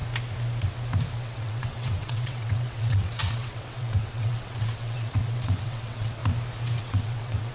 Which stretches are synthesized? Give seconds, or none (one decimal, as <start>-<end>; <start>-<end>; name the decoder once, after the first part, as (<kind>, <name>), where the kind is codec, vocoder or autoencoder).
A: 1.2-6.2 (vocoder, WaveNeXt); 6.8-7.5